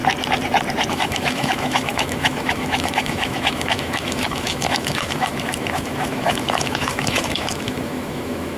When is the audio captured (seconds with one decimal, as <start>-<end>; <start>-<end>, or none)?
0.0-0.9